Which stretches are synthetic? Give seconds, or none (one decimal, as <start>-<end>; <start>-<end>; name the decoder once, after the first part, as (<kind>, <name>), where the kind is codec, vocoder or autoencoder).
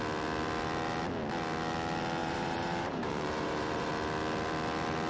2.2-3.9 (vocoder, BigVGAN v2)